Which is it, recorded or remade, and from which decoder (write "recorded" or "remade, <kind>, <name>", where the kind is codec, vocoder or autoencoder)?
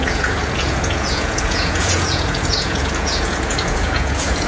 remade, vocoder, Vocos